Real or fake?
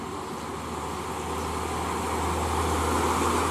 real